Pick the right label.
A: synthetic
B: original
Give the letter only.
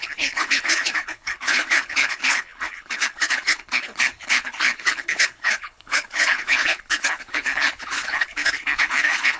A